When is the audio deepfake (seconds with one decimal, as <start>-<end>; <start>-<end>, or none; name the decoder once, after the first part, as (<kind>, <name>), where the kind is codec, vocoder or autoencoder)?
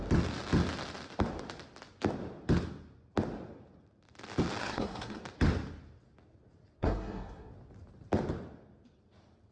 4.6-5.2 (codec, SNAC); 6.8-7.5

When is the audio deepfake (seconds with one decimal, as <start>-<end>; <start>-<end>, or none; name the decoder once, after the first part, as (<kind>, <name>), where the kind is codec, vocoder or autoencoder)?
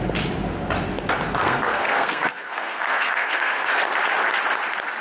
1.4-3.8 (codec, SNAC)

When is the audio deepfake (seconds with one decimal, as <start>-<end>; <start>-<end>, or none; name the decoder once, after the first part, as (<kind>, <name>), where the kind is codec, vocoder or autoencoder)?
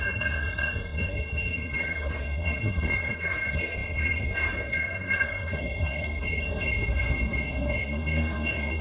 0.0-8.8 (codec, SNAC)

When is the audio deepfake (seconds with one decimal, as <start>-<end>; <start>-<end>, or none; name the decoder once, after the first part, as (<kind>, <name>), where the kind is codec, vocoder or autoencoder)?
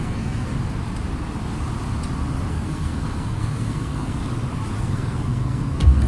0.0-0.5 (codec, SNAC); 2.5-4.2; 4.8-6.1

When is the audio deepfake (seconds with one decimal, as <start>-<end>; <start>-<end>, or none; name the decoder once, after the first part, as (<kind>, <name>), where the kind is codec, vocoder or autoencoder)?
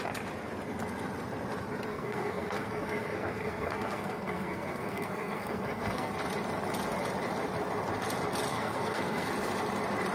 1.9-6.1 (codec, SNAC); 8.5-9.3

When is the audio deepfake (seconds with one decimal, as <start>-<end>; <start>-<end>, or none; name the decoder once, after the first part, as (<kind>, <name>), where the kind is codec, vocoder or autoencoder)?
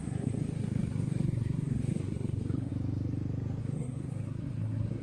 0.0-2.7 (codec, SNAC); 3.6-5.0